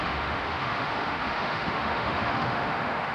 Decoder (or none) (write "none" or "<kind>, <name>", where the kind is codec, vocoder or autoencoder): autoencoder, DAC-VAE